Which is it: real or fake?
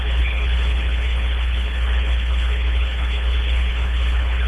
fake